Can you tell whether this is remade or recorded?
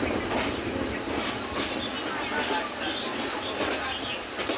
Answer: recorded